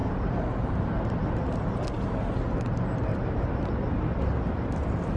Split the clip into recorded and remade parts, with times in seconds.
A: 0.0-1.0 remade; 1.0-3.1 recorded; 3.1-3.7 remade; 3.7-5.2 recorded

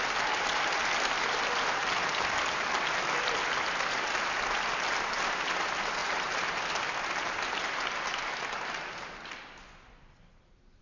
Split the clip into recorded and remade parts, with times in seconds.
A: 0.0-10.8 recorded

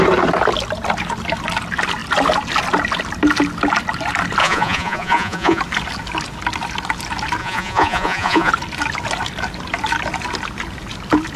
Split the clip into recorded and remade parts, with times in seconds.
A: 0.0-4.4 recorded; 4.4-5.6 remade; 5.6-7.4 recorded; 7.4-8.5 remade; 8.5-11.4 recorded

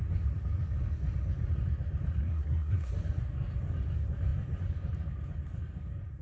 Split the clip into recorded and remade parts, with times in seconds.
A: 0.0-2.2 recorded; 2.2-2.9 remade; 2.9-6.2 recorded

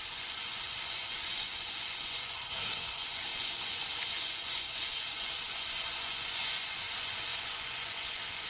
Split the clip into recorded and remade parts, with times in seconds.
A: 0.0-8.5 remade

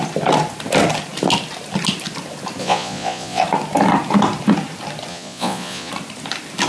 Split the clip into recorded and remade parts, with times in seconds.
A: 0.0-2.6 recorded; 2.6-3.4 remade; 3.4-5.1 recorded; 5.1-5.9 remade; 5.9-6.7 recorded

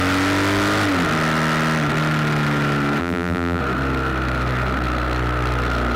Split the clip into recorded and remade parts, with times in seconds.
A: 0.0-3.0 recorded; 3.0-3.6 remade; 3.6-6.0 recorded